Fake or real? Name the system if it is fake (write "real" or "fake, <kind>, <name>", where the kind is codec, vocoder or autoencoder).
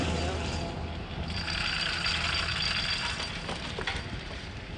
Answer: real